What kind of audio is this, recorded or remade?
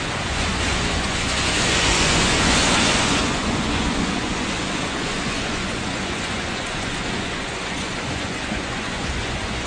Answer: remade